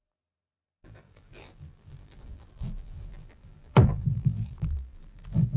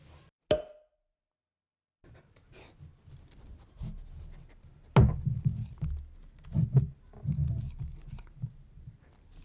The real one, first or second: second